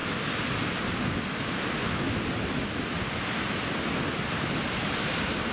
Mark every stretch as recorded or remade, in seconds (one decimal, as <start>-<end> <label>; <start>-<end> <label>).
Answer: 0.0-5.5 recorded

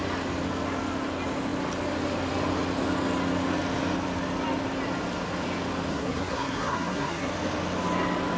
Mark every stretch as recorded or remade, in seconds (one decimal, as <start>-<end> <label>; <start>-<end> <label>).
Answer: 0.0-5.9 recorded; 5.9-7.3 remade; 7.3-8.4 recorded

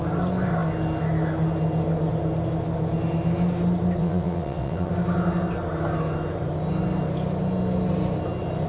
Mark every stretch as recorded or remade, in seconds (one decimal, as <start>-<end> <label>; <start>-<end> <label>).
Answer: 0.0-4.0 recorded; 4.0-4.9 remade; 4.9-8.7 recorded

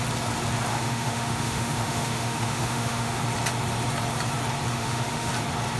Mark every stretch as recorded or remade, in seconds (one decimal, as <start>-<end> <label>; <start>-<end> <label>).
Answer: 0.0-0.7 recorded; 0.7-3.2 remade; 3.2-4.7 recorded; 4.7-5.3 remade; 5.3-5.8 recorded

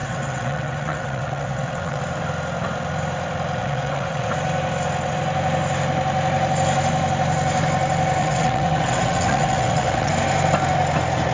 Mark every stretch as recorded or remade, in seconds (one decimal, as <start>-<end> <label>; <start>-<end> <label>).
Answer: 0.0-2.0 remade; 2.0-3.6 recorded; 3.6-4.3 remade; 4.3-8.2 recorded; 8.2-10.1 remade; 10.1-11.3 recorded